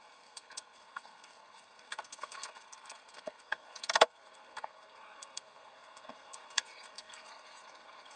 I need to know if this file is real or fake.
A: fake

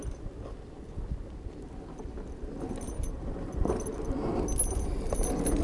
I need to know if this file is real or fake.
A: real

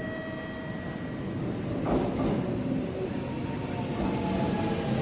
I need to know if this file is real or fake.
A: real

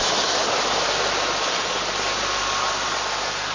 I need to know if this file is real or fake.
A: real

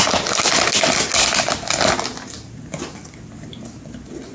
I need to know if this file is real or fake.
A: real